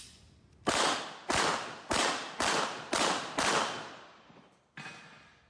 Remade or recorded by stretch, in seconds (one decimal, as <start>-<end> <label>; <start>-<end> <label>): 0.0-1.5 recorded; 1.5-4.6 remade; 4.6-5.5 recorded